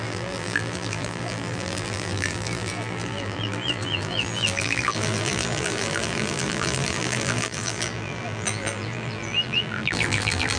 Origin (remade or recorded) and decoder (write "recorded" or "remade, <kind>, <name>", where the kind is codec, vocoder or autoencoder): remade, vocoder, BigVGAN v2